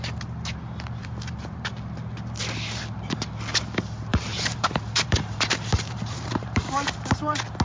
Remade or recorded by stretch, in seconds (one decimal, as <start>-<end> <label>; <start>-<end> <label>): 0.0-1.0 recorded; 1.0-1.7 remade; 1.7-4.1 recorded; 4.1-6.7 remade; 6.7-7.6 recorded